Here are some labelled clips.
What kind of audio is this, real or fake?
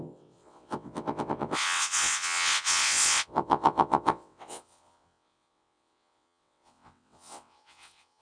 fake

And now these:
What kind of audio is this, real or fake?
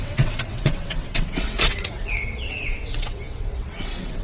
fake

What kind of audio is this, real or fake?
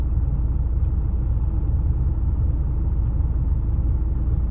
real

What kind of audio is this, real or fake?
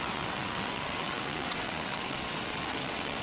fake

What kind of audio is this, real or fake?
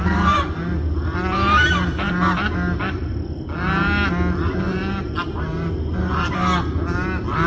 real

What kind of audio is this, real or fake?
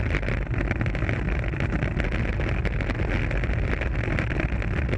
real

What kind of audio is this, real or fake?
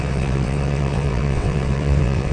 fake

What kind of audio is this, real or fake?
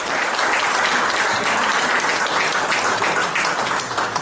real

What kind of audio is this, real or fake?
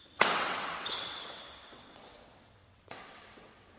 fake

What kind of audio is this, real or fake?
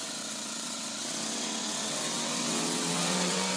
fake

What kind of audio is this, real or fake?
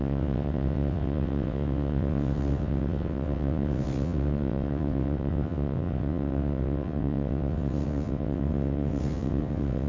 fake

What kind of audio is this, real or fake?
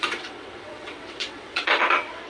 fake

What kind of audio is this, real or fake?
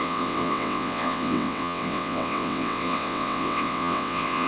fake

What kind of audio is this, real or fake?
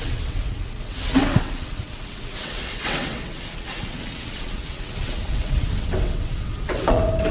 fake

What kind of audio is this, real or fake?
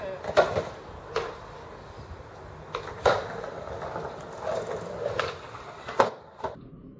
real